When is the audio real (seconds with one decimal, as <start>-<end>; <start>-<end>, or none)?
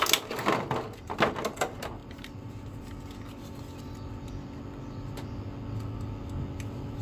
0.0-2.0; 2.8-7.0